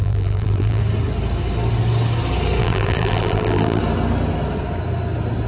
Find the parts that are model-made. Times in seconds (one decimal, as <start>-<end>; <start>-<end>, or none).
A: 0.0-0.8; 2.6-3.8

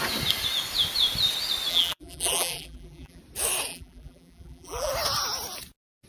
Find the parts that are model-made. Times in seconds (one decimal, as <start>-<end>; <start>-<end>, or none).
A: 1.7-3.2; 3.7-4.9

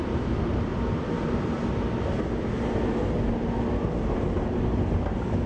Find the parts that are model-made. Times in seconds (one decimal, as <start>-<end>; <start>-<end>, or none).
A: 0.0-0.7; 4.0-5.5

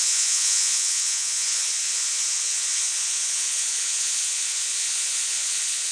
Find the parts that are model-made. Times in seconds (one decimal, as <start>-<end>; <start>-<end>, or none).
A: 0.0-5.9

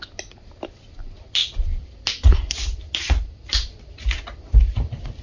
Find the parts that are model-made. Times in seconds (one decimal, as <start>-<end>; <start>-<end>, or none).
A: none